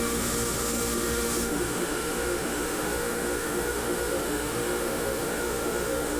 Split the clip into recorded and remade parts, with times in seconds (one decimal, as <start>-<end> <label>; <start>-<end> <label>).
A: 0.0-6.2 remade